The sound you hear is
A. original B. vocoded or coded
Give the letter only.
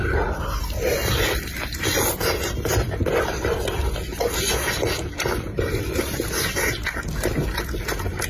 B